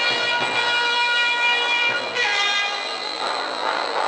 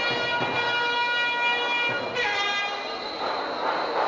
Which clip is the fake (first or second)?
first